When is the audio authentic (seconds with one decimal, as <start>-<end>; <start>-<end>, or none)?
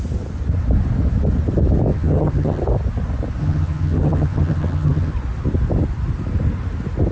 0.0-1.9; 2.6-3.4; 5.1-7.1